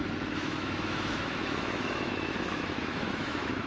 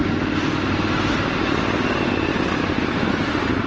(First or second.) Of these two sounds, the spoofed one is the first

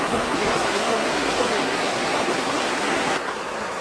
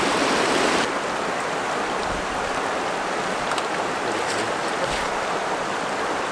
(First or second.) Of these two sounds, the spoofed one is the first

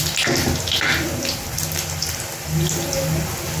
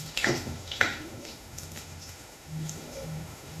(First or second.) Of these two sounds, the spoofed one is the second